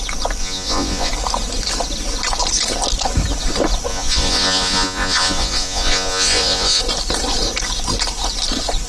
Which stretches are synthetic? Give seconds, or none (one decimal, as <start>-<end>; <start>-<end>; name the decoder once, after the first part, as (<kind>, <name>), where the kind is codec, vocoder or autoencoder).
0.4-1.1 (vocoder, Vocos); 3.9-6.8